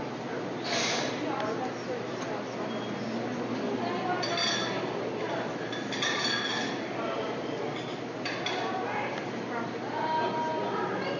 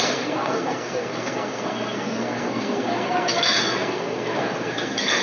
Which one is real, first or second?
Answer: first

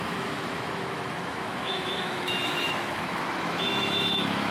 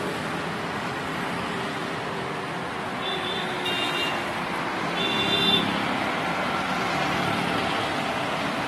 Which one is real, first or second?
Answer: second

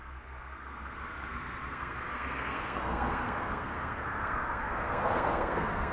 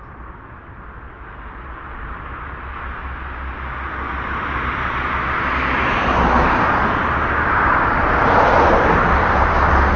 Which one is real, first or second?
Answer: second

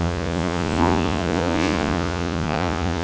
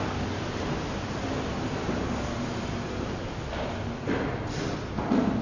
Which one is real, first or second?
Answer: second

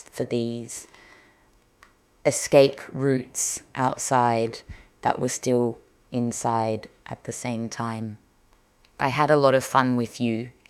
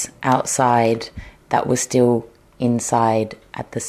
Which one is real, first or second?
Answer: second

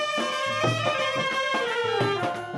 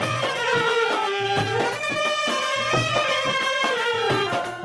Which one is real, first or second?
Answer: first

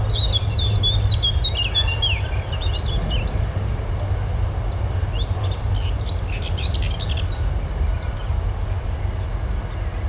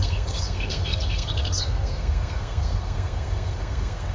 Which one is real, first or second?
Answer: first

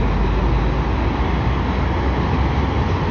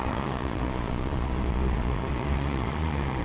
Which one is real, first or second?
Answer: first